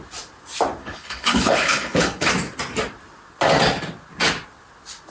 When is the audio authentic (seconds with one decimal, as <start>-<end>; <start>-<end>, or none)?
0.0-0.8; 2.3-5.1